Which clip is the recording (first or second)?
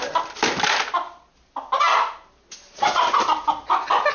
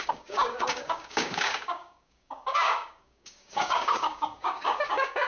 first